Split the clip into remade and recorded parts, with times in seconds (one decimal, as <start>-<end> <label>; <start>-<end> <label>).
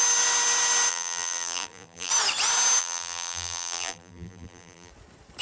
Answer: 0.0-0.9 recorded; 0.9-2.1 remade; 2.1-2.8 recorded; 2.8-4.9 remade; 4.9-5.4 recorded